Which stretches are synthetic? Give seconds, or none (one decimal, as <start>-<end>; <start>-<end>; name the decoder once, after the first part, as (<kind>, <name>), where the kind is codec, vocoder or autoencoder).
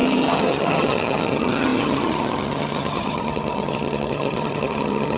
0.0-5.2 (vocoder, HiFi-GAN)